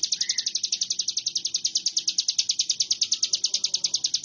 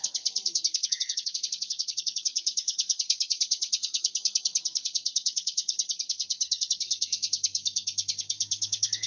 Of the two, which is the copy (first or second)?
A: second